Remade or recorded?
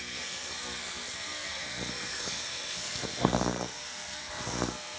remade